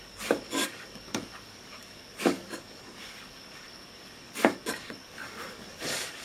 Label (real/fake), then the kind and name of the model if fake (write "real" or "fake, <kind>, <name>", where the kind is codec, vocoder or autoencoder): fake, codec, DAC